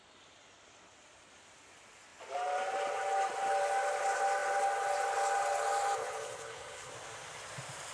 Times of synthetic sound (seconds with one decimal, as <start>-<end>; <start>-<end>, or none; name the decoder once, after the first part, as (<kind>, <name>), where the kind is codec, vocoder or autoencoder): 6.0-6.9 (codec, HILCodec)